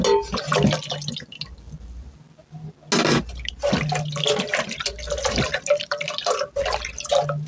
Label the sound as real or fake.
real